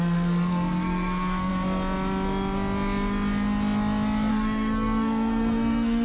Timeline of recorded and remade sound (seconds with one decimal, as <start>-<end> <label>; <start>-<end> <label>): 0.0-1.5 remade; 1.5-4.3 recorded; 4.3-6.0 remade